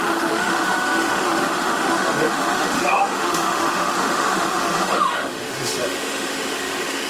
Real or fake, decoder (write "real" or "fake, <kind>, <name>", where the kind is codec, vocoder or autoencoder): fake, autoencoder, DAC-VAE